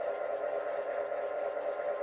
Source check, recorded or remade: recorded